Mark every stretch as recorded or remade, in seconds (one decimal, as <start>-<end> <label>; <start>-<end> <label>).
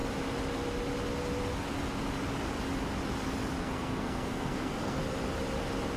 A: 0.0-3.6 recorded; 3.6-5.0 remade; 5.0-6.0 recorded